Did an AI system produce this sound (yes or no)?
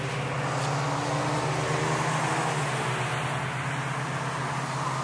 no